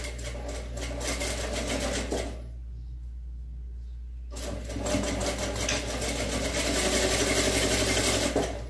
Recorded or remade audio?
recorded